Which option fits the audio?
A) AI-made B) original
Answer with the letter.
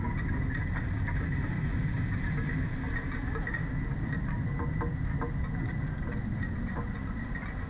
B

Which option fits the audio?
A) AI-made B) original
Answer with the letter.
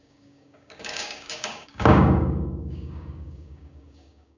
A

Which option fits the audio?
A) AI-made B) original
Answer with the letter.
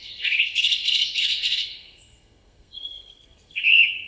A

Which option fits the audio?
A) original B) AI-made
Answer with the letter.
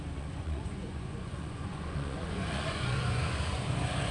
B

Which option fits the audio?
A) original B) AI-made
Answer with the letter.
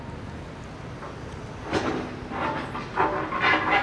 A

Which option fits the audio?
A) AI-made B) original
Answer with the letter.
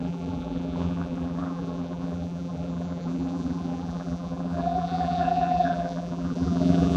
A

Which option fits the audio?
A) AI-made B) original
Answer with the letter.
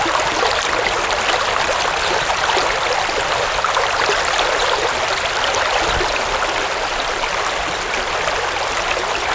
B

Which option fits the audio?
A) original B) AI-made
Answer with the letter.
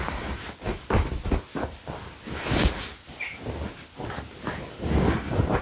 A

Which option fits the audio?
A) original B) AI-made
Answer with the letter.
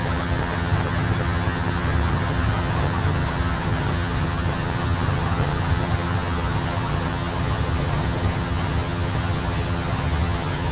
B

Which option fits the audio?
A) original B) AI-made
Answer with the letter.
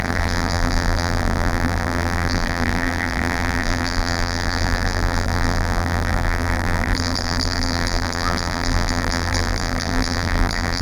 B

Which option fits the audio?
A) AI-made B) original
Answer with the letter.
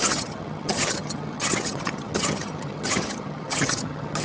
A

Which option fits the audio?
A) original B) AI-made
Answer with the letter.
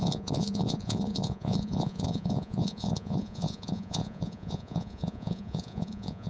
B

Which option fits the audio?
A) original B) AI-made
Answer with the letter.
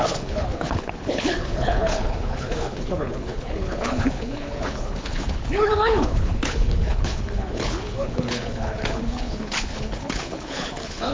B